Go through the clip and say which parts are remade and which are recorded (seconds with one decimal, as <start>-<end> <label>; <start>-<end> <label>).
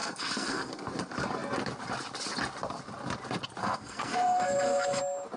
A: 0.0-0.8 remade; 0.8-3.6 recorded; 3.6-5.0 remade; 5.0-5.4 recorded